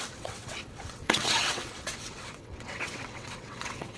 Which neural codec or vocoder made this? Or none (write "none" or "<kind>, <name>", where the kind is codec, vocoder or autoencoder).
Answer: vocoder, WaveNeXt